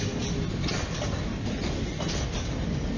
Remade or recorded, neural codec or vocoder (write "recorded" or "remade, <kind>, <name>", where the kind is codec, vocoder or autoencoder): recorded